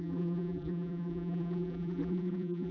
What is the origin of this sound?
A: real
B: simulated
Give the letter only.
B